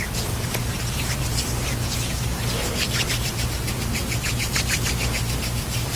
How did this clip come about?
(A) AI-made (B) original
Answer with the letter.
B